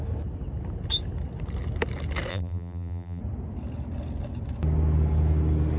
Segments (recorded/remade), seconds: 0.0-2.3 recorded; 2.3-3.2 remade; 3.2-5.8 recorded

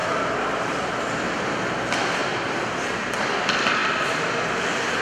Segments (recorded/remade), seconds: 0.0-1.1 remade; 1.1-2.2 recorded; 2.2-2.8 remade; 2.8-5.0 recorded

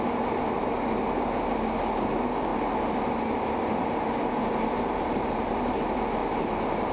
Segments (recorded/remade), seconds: 0.0-6.2 recorded; 6.2-6.9 remade

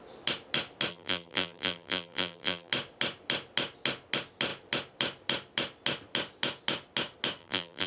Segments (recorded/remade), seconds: 0.0-0.9 recorded; 0.9-2.7 remade; 2.7-7.4 recorded; 7.4-7.9 remade

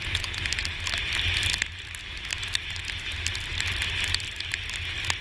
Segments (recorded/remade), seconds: 0.0-5.2 recorded

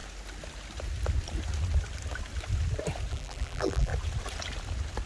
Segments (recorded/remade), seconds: 0.0-3.1 recorded; 3.1-3.9 remade; 3.9-5.1 recorded

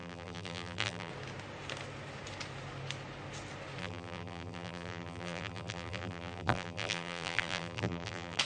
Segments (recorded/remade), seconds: 0.0-1.1 remade; 1.1-3.8 recorded; 3.8-8.4 remade